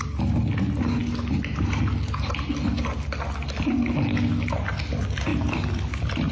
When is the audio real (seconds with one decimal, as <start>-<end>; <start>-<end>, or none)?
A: 0.0-5.3